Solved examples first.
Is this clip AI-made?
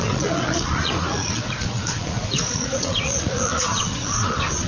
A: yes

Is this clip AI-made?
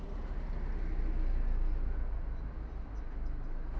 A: no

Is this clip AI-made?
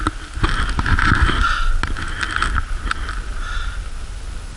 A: no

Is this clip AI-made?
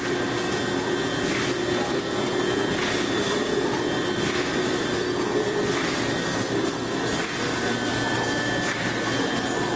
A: no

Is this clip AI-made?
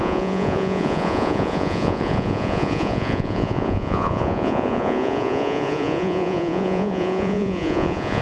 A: yes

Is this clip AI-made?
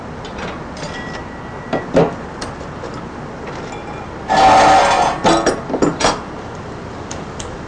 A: no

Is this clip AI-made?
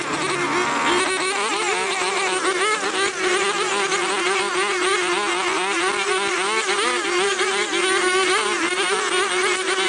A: no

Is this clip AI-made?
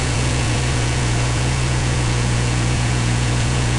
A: yes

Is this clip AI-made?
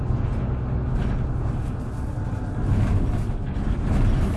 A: no